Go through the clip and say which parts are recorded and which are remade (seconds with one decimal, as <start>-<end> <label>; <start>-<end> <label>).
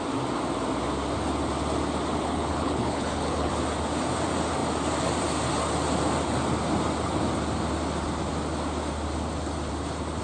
0.0-2.2 recorded; 2.2-3.5 remade; 3.5-10.2 recorded